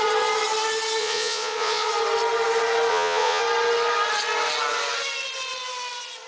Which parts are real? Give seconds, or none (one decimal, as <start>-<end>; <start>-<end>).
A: 0.0-1.0; 1.9-2.9; 3.4-6.3